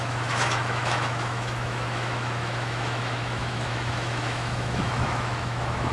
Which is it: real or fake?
fake